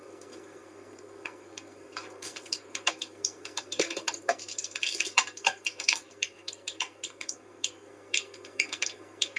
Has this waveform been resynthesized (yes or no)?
yes